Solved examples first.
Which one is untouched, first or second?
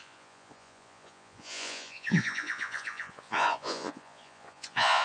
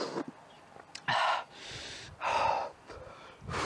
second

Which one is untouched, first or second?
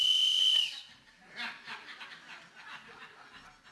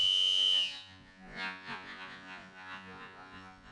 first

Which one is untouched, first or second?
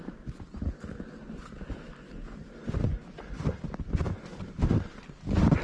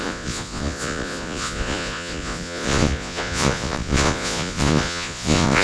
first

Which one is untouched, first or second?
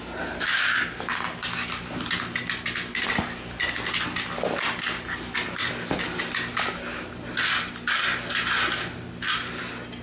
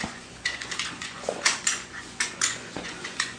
first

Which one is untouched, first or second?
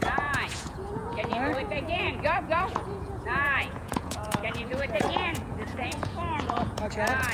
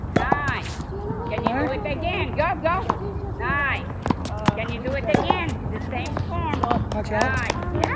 second